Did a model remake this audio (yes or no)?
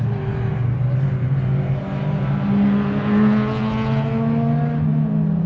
no